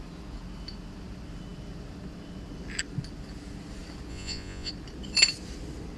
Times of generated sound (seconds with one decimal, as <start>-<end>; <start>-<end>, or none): 4.1-4.7

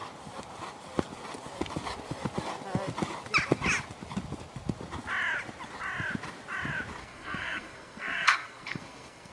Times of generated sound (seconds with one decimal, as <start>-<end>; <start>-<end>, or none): 7.0-9.3